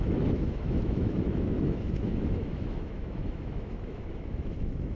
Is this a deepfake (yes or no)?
yes